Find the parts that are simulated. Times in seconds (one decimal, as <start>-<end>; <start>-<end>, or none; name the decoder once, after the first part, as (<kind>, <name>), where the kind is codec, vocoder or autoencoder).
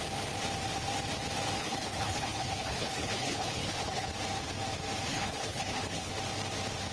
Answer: 1.6-4.1 (codec, HILCodec); 5.1-6.1